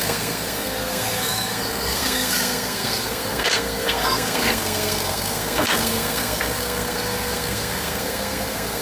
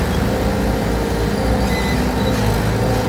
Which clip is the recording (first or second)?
second